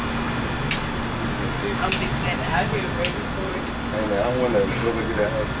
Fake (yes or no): no